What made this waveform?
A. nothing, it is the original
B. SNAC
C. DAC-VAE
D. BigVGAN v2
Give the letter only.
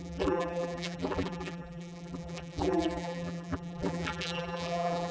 D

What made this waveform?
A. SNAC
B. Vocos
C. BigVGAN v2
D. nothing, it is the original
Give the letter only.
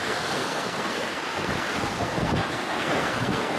A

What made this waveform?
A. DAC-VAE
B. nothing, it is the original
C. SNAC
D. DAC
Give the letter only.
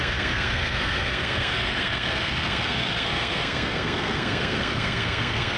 C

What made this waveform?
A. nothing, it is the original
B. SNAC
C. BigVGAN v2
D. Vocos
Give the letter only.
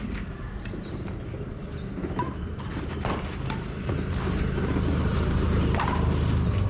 C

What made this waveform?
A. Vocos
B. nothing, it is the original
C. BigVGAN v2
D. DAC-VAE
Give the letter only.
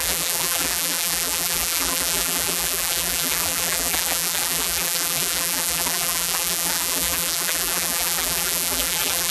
C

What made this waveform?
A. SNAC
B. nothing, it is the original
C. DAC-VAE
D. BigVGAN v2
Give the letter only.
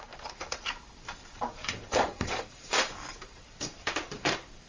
D